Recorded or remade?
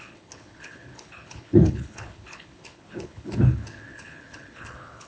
remade